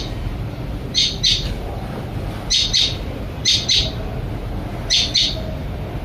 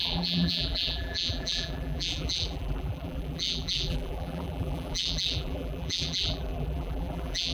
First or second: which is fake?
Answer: second